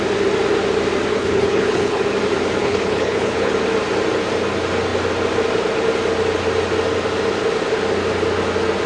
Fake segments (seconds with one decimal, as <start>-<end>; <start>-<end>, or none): 1.1-2.0; 2.6-3.5